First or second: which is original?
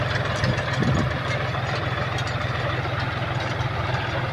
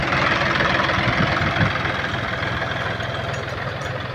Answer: first